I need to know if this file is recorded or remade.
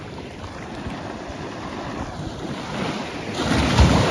recorded